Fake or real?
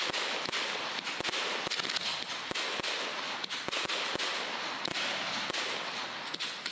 real